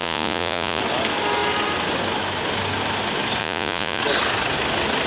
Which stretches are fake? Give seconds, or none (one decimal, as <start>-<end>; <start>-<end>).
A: 0.0-0.8; 3.4-4.0